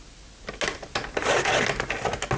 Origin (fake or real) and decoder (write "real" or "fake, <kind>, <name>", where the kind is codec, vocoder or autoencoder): real